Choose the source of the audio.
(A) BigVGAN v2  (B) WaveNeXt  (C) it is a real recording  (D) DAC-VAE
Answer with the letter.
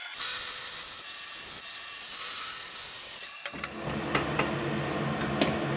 C